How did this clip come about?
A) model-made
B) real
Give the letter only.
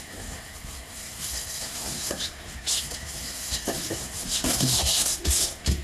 A